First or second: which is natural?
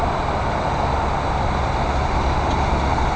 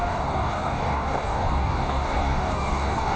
first